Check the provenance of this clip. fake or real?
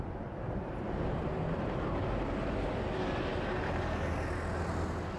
real